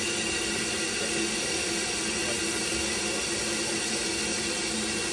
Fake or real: real